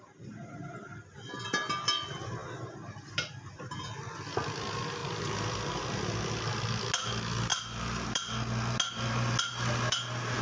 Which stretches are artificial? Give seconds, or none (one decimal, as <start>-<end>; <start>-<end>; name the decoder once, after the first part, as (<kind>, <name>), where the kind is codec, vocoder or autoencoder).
2.4-3.6 (vocoder, BigVGAN v2); 5.0-6.8; 7.5-8.2